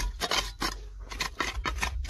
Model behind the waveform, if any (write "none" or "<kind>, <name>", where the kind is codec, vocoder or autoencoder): none